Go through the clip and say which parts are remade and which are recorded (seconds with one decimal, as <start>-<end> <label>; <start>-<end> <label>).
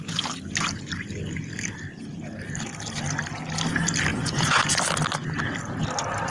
0.0-4.1 recorded; 4.1-4.8 remade; 4.8-6.3 recorded